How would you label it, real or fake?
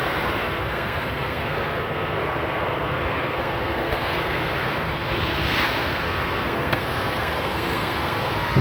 fake